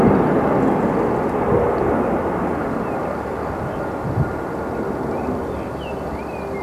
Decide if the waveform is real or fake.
real